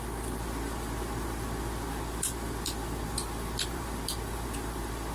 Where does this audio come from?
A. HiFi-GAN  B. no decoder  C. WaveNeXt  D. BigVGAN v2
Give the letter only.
D